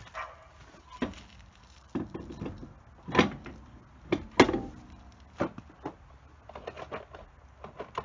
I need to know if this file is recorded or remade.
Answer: recorded